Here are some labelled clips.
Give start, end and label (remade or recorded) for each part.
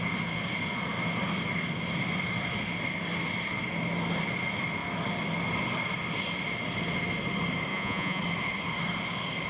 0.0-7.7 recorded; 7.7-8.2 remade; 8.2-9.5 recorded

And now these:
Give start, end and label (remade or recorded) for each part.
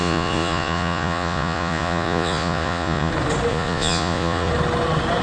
0.0-3.1 remade; 3.1-3.5 recorded; 3.5-4.5 remade; 4.5-5.2 recorded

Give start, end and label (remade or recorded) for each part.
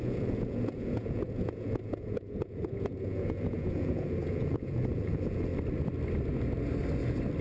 0.0-5.5 remade; 5.5-7.4 recorded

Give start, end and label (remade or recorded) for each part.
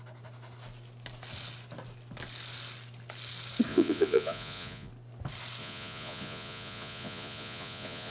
0.0-3.7 recorded; 3.7-4.9 remade; 4.9-5.6 recorded; 5.6-8.1 remade